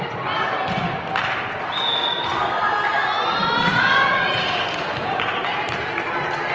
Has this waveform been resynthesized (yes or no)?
no